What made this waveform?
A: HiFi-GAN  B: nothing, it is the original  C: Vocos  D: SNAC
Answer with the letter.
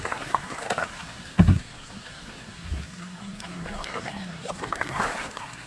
D